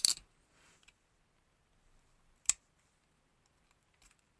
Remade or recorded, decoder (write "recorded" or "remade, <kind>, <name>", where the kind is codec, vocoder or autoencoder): recorded